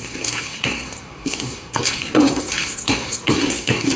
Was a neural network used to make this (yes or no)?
yes